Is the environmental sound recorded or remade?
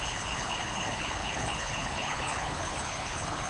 remade